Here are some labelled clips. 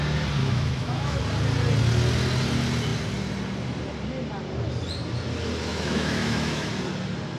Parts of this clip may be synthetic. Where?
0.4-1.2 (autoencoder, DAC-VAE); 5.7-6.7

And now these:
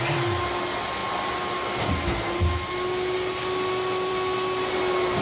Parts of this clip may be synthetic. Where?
none

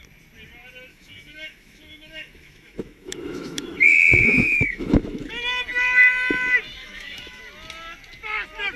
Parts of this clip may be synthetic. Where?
0.9-5.3 (autoencoder, DAC-VAE); 6.8-7.4

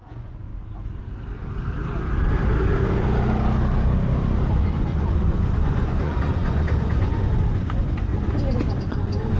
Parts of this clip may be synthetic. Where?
0.0-0.5 (vocoder, Vocos); 4.6-8.1; 8.9-9.4

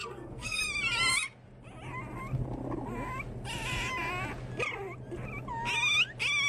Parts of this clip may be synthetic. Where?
0.0-0.6 (codec, SNAC)

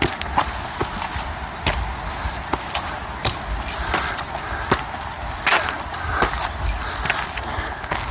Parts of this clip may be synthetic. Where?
none